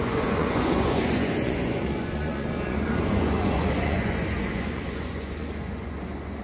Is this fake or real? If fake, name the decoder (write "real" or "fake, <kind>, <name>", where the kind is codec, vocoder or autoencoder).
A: fake, vocoder, Vocos